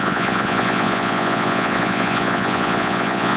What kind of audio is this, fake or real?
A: fake